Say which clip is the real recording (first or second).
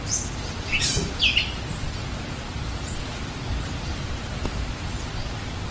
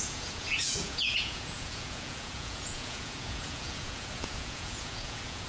first